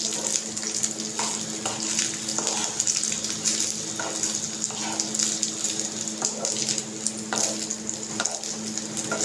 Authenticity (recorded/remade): recorded